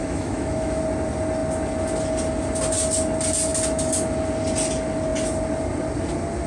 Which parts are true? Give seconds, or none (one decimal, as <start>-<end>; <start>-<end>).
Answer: 0.8-6.5